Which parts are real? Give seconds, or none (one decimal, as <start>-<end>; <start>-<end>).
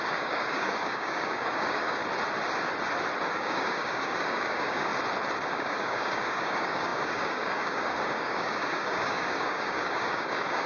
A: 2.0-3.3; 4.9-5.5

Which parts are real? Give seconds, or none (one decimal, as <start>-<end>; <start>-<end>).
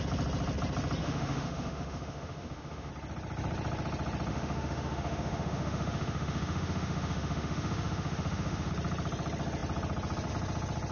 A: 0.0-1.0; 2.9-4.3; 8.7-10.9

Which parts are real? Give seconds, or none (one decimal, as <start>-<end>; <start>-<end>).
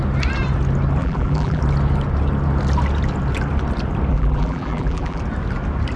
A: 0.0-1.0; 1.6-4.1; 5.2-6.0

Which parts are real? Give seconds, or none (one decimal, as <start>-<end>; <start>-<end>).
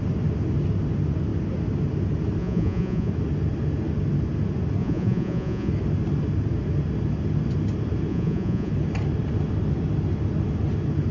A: 0.0-2.4; 3.1-4.8; 5.7-8.1; 8.7-11.1